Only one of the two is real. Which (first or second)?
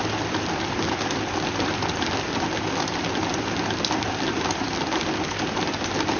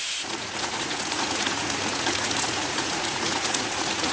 first